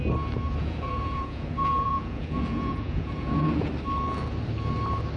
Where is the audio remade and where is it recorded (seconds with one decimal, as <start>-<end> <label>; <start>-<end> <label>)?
0.0-0.6 recorded; 0.6-3.7 remade; 3.7-5.2 recorded